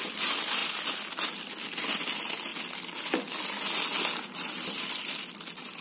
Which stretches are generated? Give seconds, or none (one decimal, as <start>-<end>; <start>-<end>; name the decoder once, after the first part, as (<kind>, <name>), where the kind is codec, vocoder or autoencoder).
none